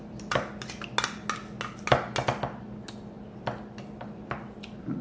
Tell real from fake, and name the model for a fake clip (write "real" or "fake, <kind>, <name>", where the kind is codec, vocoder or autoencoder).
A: real